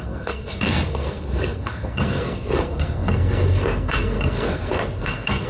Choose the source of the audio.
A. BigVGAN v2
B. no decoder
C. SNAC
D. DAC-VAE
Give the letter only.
C